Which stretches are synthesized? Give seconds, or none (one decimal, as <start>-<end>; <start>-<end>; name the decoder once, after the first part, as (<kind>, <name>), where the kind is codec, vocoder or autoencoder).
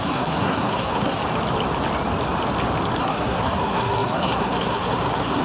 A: 0.0-1.2 (codec, SNAC); 3.0-5.4